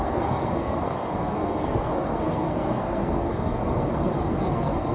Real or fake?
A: fake